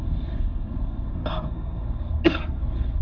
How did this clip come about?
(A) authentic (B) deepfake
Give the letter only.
B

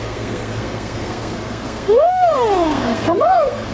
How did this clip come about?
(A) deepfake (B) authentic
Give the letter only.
A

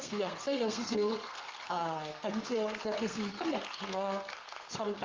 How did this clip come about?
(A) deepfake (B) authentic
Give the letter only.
A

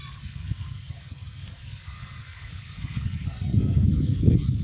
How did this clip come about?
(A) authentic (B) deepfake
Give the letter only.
B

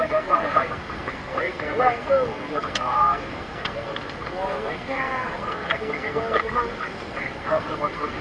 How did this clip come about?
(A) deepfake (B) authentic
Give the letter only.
A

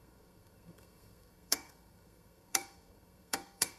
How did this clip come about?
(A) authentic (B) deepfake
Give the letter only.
B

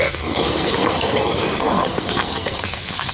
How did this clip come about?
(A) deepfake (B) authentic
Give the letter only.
A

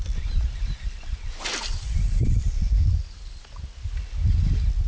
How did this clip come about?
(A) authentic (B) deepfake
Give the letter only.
A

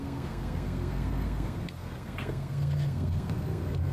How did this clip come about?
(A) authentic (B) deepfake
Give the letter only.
B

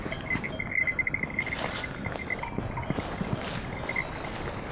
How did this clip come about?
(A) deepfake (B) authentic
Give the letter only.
B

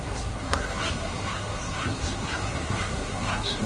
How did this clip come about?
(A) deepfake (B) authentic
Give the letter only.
A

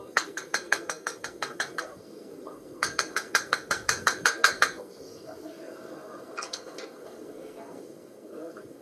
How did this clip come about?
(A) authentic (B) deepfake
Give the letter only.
B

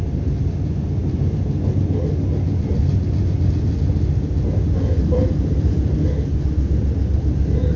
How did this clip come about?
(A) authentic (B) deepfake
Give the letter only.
A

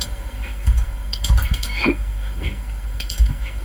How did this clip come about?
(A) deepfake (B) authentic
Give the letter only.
A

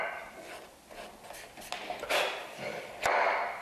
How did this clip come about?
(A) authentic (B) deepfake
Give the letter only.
A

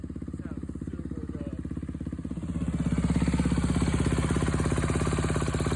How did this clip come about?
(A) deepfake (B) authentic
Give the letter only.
B